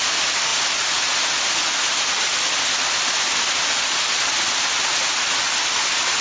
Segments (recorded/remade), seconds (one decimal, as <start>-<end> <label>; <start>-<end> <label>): 0.0-6.2 recorded